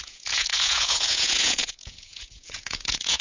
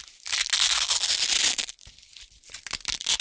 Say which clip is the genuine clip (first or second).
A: second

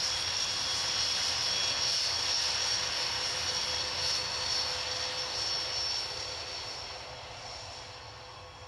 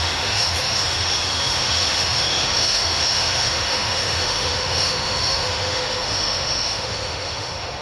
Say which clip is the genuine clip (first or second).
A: first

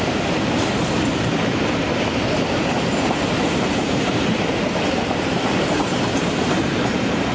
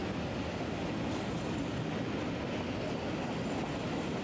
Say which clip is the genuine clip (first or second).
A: second